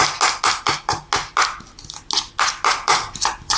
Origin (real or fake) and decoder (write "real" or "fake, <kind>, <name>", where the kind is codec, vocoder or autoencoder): real